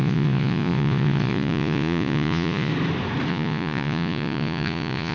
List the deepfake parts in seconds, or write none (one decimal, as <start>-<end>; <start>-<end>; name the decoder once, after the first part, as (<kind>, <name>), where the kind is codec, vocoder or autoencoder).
0.0-2.7 (vocoder, Vocos); 3.3-5.1